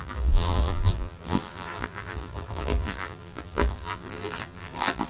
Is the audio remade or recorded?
remade